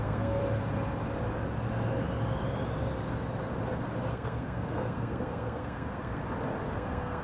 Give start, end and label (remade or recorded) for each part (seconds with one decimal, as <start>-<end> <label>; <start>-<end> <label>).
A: 0.0-0.4 remade; 0.4-4.1 recorded; 4.1-6.2 remade; 6.2-6.7 recorded; 6.7-7.2 remade